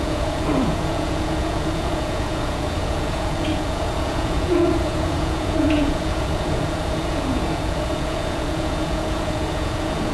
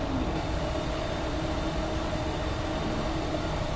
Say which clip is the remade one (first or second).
first